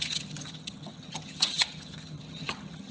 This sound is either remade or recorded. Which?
remade